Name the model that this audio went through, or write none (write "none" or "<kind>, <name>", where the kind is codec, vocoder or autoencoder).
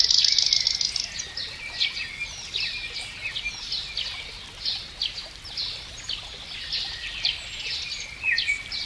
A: none